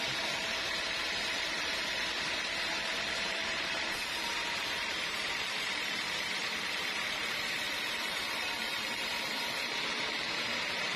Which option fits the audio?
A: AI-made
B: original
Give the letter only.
A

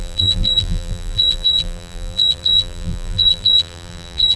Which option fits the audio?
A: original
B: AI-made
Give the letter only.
B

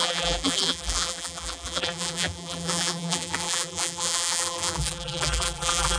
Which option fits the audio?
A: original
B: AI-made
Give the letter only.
B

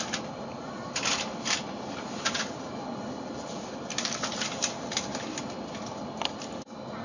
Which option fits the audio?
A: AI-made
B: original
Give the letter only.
A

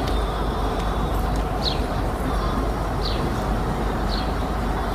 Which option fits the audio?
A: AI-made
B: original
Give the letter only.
A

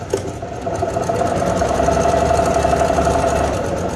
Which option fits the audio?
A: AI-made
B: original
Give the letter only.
B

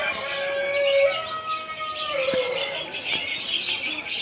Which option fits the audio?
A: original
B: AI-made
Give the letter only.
A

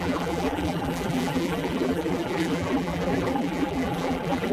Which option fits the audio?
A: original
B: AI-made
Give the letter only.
B